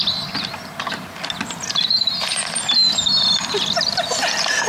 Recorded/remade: remade